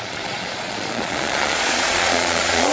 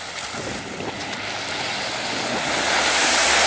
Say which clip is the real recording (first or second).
second